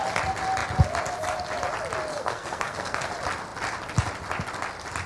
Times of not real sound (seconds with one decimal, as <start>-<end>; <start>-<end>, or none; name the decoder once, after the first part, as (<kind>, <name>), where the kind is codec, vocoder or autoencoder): 2.1-3.1 (codec, SNAC)